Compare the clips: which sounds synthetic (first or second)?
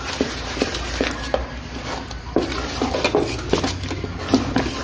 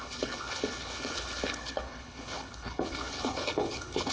second